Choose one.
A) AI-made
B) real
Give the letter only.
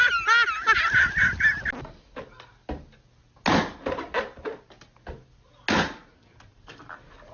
B